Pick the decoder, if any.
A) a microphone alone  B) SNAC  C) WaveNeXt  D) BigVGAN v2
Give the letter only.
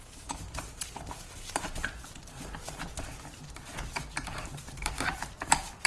D